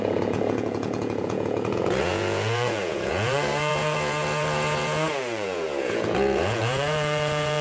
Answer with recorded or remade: remade